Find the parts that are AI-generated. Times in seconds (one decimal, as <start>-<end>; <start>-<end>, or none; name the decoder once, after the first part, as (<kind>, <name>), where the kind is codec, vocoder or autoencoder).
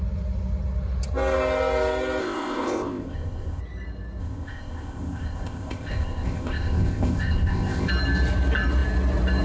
2.2-3.6 (codec, ZipCodec); 4.2-7.9